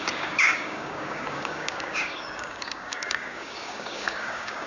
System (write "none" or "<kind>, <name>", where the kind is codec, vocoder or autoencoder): codec, DAC